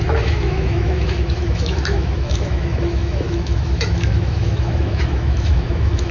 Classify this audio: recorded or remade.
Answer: remade